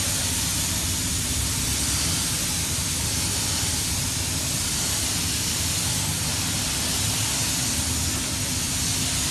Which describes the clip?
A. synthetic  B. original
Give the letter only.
B